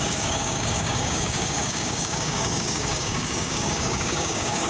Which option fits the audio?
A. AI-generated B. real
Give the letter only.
A